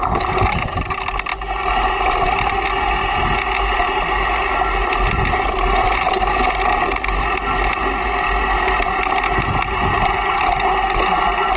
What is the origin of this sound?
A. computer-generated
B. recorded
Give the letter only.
B